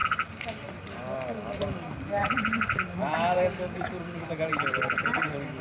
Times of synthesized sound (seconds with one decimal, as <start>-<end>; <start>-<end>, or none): 2.2-4.5